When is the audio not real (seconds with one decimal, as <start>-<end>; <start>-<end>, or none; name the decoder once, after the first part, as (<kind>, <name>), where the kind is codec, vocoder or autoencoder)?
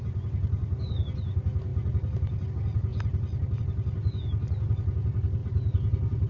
none